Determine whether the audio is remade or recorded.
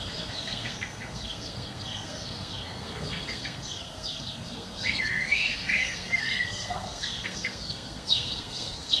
remade